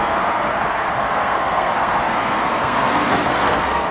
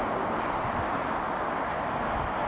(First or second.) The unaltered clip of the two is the second